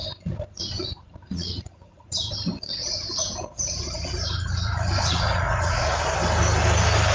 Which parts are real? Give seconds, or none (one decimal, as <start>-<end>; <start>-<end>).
2.3-2.8; 6.0-7.1